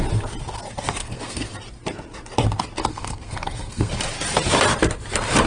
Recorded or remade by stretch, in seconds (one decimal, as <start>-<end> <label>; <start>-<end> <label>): 0.0-1.0 recorded; 1.0-1.5 remade; 1.5-2.9 recorded; 2.9-3.9 remade; 3.9-5.5 recorded